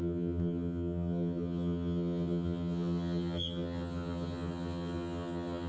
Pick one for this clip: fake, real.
fake